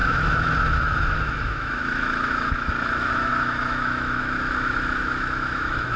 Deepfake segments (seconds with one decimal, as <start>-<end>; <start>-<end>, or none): 0.0-6.0